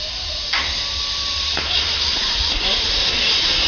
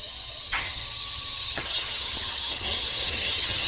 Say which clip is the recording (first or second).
first